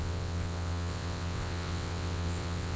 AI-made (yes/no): yes